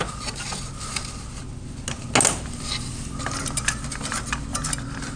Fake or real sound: real